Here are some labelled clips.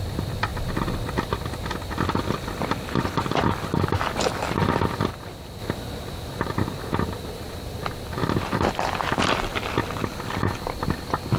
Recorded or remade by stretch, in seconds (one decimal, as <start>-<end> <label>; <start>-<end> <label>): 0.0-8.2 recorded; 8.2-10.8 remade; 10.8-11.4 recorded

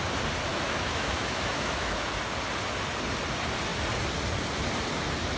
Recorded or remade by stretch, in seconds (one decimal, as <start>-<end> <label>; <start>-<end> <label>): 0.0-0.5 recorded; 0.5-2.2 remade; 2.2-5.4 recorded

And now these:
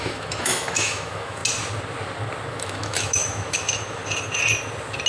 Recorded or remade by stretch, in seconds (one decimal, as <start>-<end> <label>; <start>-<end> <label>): 0.0-1.4 remade; 1.4-2.5 recorded; 2.5-4.0 remade; 4.0-5.1 recorded

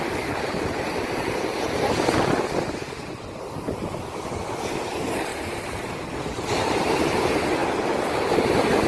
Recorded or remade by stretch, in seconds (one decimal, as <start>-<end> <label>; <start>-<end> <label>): 0.0-5.3 recorded; 5.3-5.9 remade; 5.9-7.6 recorded; 7.6-8.3 remade; 8.3-8.9 recorded